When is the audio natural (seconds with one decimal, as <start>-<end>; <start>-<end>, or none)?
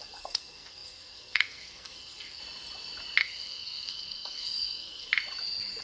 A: 2.4-3.2; 5.1-5.8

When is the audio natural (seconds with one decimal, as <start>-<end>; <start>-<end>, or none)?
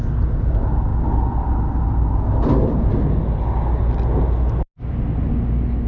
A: 0.0-5.9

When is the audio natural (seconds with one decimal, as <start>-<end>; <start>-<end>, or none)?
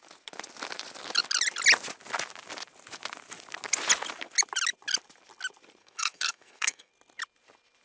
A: 0.0-5.8; 6.9-7.8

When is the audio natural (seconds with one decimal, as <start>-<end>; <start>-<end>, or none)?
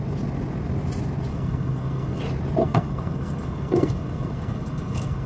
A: 0.0-1.3; 2.2-2.6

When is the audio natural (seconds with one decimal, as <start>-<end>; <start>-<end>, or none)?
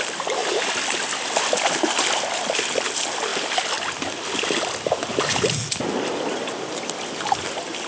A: 0.0-7.9